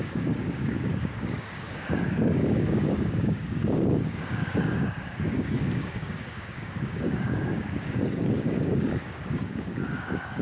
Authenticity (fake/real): fake